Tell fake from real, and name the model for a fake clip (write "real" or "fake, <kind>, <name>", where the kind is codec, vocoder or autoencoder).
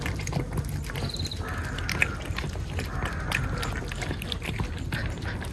real